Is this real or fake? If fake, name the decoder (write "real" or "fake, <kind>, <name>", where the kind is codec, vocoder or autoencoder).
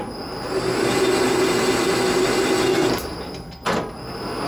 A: real